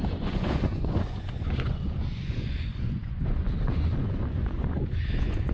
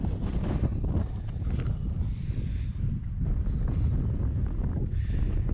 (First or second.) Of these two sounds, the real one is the second